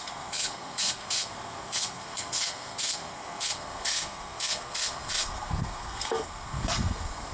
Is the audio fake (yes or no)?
yes